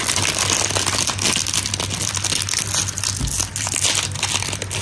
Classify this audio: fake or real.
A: real